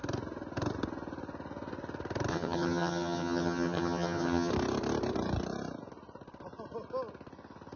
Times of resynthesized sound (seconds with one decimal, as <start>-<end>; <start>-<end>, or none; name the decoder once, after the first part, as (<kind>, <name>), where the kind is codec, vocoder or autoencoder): 2.3-4.5 (vocoder, HiFi-GAN)